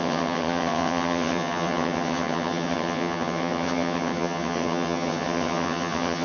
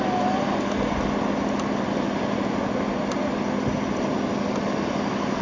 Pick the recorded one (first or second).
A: second